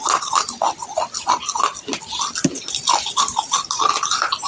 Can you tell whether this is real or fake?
real